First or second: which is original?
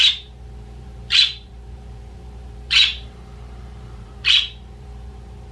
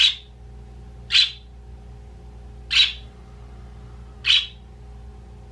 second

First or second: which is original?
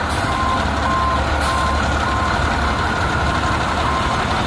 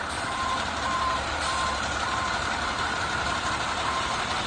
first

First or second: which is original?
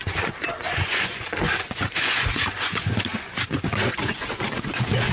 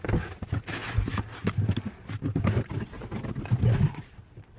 second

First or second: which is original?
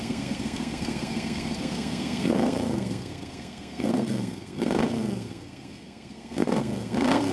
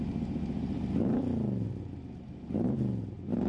second